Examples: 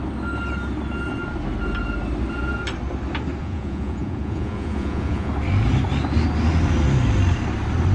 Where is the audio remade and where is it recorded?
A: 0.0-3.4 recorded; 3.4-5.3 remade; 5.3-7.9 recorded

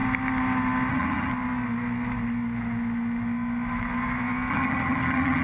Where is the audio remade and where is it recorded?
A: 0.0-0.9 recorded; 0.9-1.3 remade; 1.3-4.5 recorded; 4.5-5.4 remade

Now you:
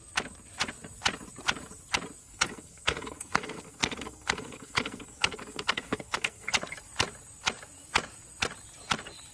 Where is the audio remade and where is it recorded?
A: 0.0-2.2 recorded; 2.2-6.5 remade; 6.5-9.3 recorded